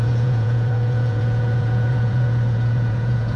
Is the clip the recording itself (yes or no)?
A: no